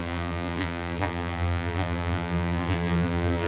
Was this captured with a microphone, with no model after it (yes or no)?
no